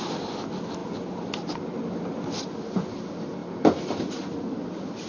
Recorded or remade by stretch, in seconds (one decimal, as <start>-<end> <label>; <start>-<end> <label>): 0.0-5.1 recorded